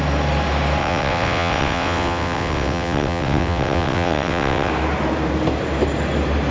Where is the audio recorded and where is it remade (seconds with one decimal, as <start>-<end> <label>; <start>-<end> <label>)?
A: 0.0-0.8 recorded; 0.8-4.7 remade; 4.7-6.5 recorded

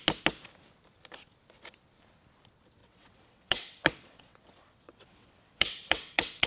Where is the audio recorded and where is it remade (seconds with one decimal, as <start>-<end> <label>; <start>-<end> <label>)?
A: 0.0-2.8 recorded; 2.8-6.5 remade

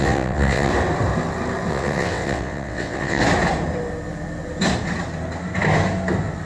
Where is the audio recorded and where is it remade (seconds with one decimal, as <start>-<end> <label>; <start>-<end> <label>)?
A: 0.0-0.7 remade; 0.7-1.7 recorded; 1.7-3.2 remade; 3.2-6.5 recorded

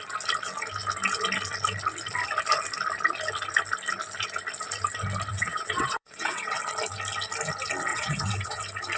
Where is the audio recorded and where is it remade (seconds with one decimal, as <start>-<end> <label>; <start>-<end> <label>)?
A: 0.0-5.3 recorded; 5.3-6.6 remade; 6.6-7.9 recorded; 7.9-8.6 remade; 8.6-9.0 recorded